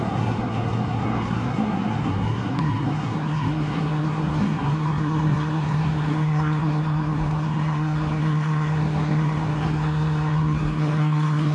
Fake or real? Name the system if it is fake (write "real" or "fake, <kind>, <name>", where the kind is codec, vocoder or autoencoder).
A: fake, codec, SNAC